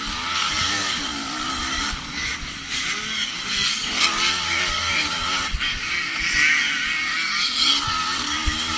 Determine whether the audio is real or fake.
fake